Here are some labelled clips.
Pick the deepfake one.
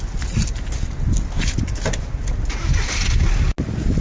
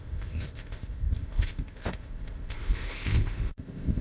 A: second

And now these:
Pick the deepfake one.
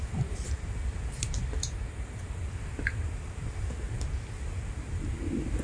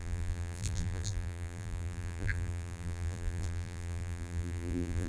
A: second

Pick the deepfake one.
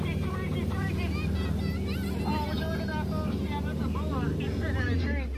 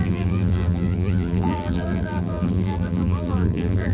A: second